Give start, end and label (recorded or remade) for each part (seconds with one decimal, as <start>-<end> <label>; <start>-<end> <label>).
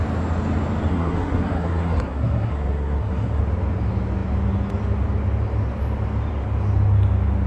0.0-0.9 recorded; 0.9-3.4 remade; 3.4-7.5 recorded